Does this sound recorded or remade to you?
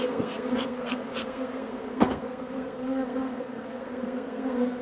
remade